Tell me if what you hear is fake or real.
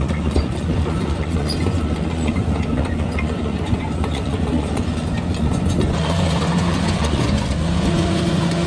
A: fake